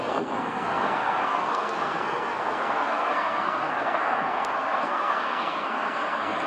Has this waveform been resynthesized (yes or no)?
yes